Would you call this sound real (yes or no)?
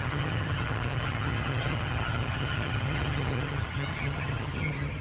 no